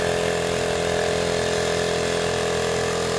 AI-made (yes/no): no